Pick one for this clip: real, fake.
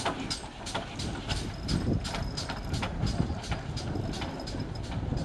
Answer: real